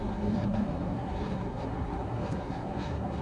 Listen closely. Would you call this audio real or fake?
fake